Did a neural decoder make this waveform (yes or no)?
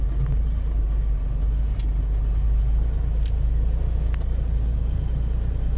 no